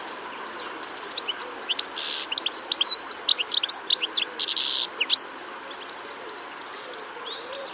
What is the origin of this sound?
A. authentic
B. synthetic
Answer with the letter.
A